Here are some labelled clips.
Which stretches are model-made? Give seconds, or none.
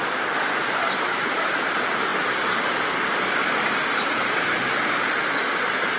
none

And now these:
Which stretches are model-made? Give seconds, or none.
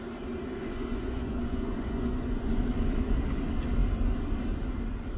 0.6-2.5 (vocoder, Vocos)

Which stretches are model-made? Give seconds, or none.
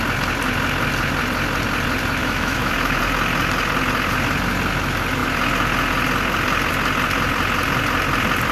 2.2-3.0 (autoencoder, DAC-VAE)